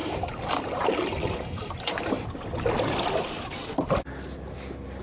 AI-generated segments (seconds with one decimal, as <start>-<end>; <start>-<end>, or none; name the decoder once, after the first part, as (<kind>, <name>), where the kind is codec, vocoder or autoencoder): 0.0-2.2 (vocoder, BigVGAN v2)